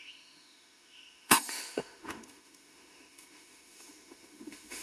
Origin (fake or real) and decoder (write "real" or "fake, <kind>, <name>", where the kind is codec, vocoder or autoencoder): fake, autoencoder, DAC-VAE